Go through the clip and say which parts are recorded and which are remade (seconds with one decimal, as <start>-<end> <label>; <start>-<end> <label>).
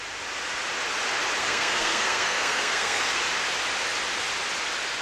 0.0-1.4 recorded; 1.4-3.2 remade; 3.2-5.0 recorded